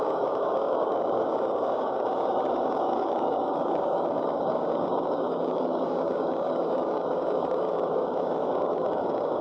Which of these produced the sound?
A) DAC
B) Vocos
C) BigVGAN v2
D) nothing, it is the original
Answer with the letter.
A